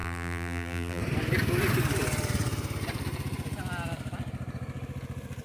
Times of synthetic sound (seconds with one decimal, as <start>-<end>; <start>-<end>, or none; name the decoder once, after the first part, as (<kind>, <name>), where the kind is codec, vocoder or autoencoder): 0.0-1.0 (vocoder, BigVGAN v2)